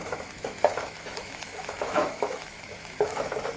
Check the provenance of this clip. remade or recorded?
remade